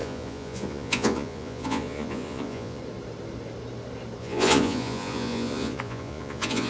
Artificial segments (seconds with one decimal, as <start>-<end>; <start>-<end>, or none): 0.0-2.8; 4.2-6.7